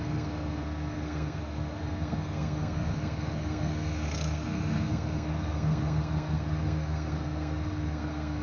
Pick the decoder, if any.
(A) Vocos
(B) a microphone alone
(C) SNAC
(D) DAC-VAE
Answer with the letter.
C